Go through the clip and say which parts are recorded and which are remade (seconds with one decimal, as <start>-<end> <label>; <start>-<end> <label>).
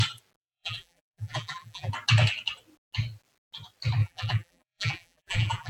0.0-0.4 recorded; 0.4-1.9 remade; 1.9-4.0 recorded; 4.0-5.7 remade